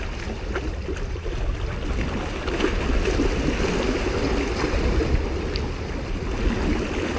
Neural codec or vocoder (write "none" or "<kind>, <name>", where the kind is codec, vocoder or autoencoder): none